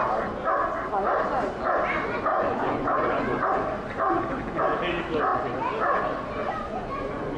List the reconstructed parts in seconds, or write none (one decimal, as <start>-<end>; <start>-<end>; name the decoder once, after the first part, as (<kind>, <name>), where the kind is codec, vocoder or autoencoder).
2.3-3.4 (vocoder, Vocos); 6.4-7.4